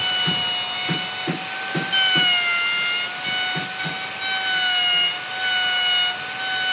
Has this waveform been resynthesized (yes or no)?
no